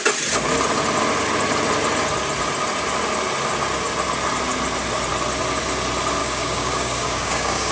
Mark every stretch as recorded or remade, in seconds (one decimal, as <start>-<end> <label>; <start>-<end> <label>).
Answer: 0.0-6.2 recorded; 6.2-7.7 remade